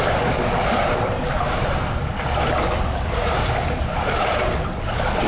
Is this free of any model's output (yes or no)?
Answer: yes